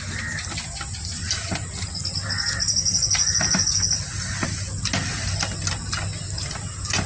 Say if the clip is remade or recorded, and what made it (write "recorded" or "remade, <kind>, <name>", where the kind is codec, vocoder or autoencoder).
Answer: recorded